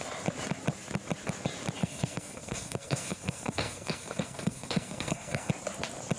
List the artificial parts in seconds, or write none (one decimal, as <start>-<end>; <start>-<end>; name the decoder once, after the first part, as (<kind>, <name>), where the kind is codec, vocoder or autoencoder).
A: 1.8-5.5 (codec, SNAC)